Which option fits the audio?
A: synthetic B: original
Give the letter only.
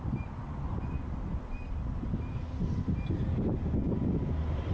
B